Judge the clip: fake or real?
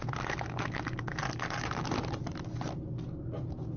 real